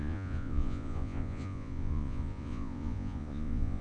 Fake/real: fake